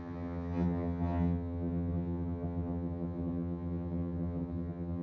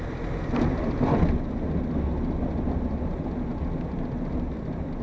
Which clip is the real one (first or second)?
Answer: second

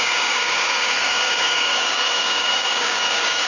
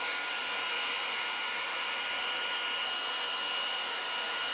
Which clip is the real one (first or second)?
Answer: second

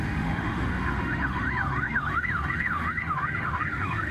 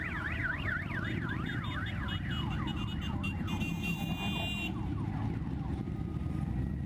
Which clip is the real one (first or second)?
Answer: second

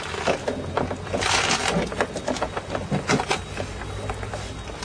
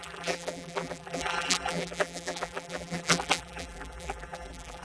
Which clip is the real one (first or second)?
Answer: first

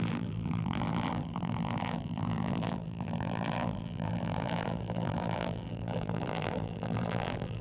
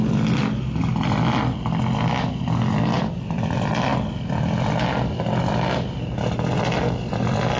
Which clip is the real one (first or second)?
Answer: second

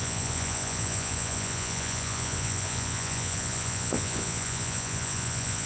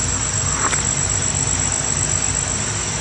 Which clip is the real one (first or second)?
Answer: second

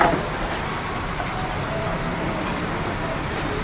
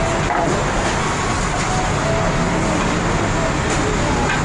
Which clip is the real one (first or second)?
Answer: second